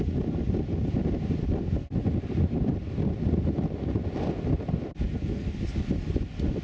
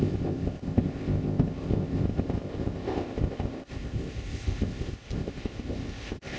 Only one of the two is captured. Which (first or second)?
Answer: first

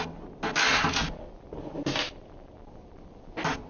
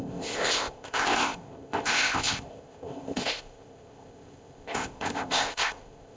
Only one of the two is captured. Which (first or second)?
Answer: first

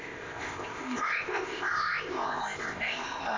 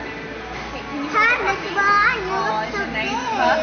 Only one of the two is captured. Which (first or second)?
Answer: second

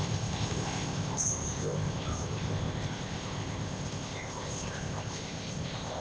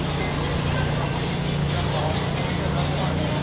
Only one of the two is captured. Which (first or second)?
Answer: second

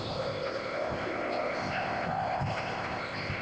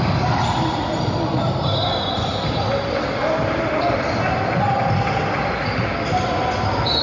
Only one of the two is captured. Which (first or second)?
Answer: second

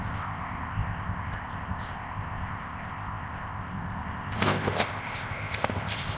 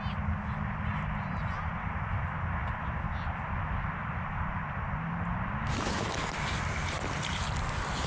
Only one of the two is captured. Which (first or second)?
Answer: second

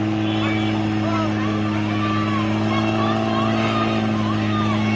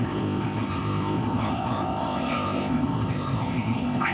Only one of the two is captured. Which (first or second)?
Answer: first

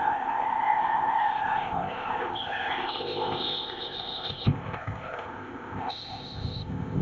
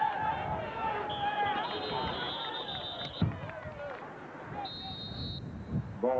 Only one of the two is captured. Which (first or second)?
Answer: second